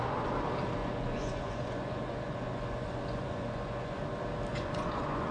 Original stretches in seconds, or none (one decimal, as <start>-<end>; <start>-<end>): 0.0-0.8; 4.0-4.5